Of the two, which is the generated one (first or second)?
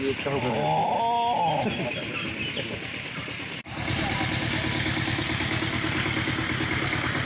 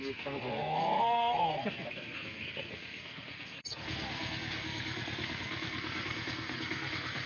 second